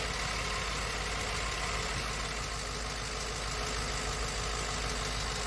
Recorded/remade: recorded